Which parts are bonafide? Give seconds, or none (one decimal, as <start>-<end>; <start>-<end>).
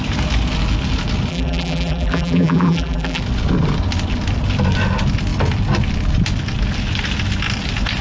0.0-1.3; 3.2-8.0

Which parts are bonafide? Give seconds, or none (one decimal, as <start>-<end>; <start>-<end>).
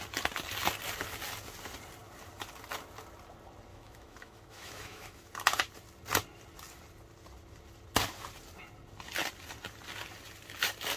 0.0-3.7; 5.3-11.0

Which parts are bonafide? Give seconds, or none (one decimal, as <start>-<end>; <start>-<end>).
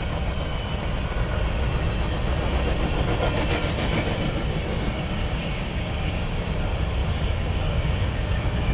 0.0-4.7; 6.5-7.0